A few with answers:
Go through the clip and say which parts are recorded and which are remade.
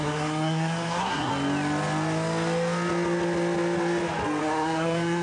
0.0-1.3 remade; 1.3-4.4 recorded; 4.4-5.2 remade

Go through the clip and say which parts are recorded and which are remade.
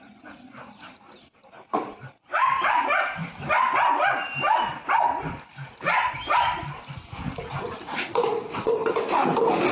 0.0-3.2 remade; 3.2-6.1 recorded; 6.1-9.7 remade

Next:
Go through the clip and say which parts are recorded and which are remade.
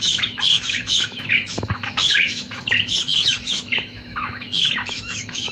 0.0-5.5 remade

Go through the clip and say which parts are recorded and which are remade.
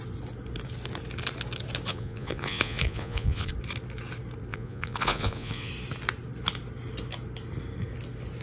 0.0-1.9 recorded; 1.9-3.5 remade; 3.5-4.5 recorded; 4.5-5.7 remade; 5.7-8.4 recorded